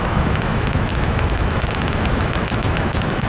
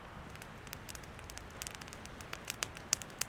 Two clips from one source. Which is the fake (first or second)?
first